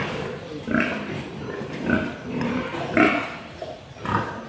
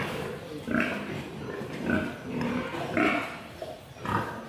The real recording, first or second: second